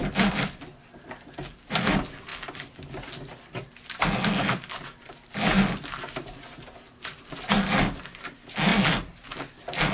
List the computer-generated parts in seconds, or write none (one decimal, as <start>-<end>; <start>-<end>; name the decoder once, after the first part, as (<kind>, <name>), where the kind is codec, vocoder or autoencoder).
none